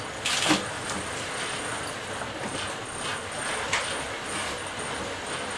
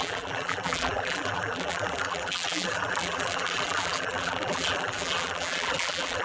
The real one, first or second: first